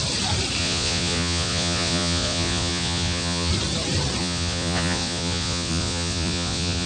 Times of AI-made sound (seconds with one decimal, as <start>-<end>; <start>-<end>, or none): 0.6-3.5; 4.2-6.9